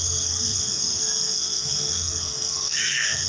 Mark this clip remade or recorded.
remade